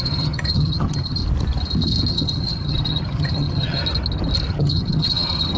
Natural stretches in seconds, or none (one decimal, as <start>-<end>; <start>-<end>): 1.2-2.1; 3.8-4.5